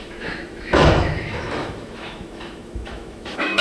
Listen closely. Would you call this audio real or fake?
fake